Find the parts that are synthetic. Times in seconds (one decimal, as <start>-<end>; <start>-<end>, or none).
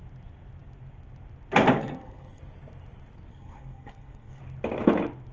1.8-2.4; 3.3-4.4